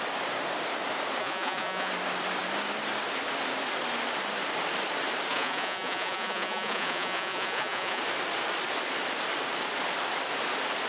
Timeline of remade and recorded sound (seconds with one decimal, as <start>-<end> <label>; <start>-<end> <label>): 0.0-1.2 recorded; 1.2-1.9 remade; 1.9-5.3 recorded; 5.3-8.0 remade; 8.0-10.9 recorded